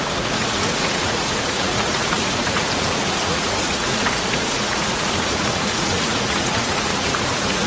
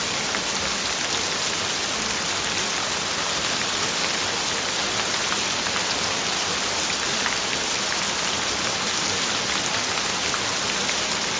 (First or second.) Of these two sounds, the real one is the second